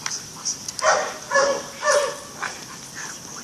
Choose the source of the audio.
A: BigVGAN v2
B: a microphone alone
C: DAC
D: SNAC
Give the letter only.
B